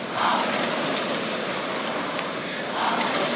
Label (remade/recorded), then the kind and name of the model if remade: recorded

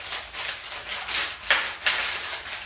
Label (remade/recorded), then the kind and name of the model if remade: recorded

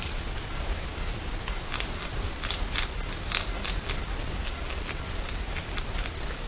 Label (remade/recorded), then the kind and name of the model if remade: recorded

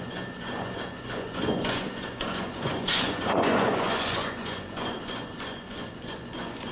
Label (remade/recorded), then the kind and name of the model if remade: remade, vocoder, Vocos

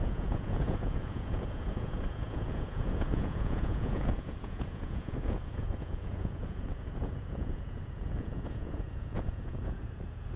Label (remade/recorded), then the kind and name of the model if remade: remade, vocoder, Vocos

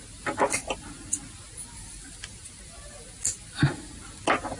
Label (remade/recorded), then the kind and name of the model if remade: recorded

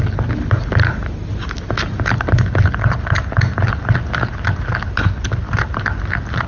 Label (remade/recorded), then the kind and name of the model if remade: recorded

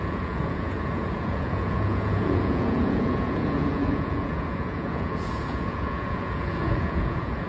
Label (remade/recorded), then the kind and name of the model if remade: remade, vocoder, Vocos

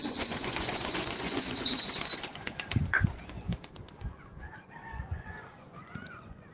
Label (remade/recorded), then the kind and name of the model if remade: remade, vocoder, Vocos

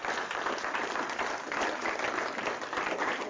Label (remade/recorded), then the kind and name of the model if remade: recorded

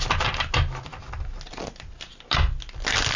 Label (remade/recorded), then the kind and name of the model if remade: recorded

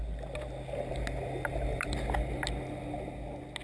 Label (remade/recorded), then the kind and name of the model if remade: recorded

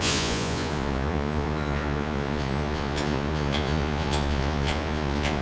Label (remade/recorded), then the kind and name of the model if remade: remade, vocoder, Vocos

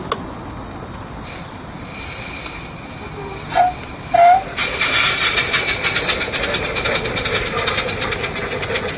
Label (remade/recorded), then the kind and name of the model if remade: recorded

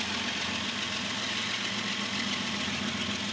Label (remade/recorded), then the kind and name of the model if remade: recorded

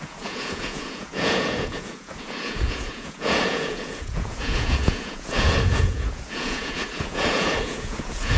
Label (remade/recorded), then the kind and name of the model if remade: remade, vocoder, Vocos